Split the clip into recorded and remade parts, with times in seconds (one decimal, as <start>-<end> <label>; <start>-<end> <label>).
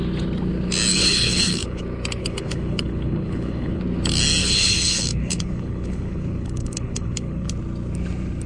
0.0-0.9 recorded; 0.9-1.8 remade; 1.8-2.2 recorded; 2.2-3.8 remade; 3.8-4.4 recorded; 4.4-7.5 remade; 7.5-8.5 recorded